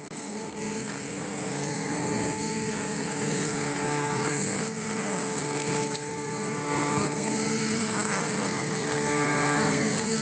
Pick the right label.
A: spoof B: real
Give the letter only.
A